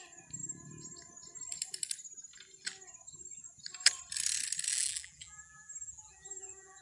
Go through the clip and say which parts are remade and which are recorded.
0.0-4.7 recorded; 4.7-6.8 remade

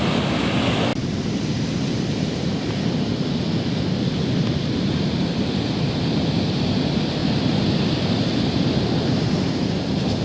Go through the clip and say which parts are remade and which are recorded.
0.0-10.2 recorded

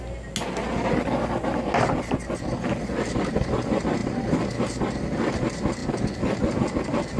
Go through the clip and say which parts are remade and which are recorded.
0.0-7.2 recorded

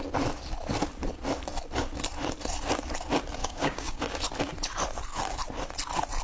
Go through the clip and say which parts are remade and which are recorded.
0.0-3.4 recorded; 3.4-4.0 remade; 4.0-6.2 recorded